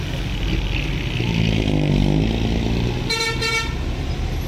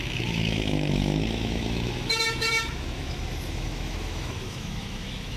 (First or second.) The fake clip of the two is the second